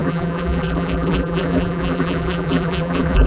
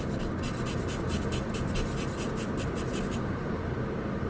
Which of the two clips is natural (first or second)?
second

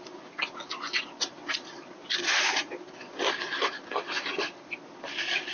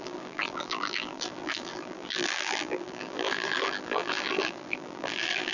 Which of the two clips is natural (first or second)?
first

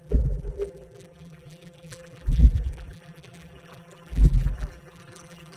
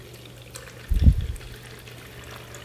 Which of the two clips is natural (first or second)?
second